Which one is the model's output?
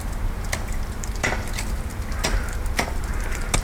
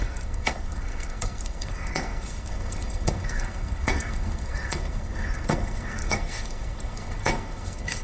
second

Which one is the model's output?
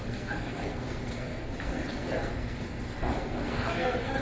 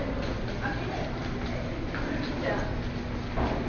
first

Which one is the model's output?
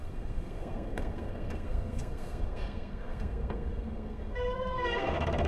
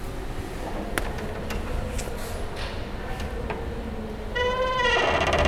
first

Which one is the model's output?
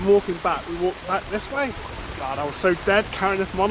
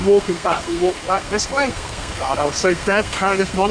second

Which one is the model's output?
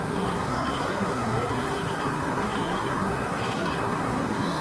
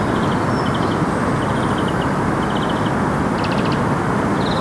first